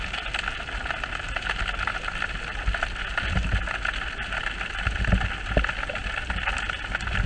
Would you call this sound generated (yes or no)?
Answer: no